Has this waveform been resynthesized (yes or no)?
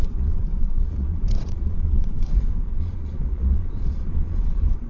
yes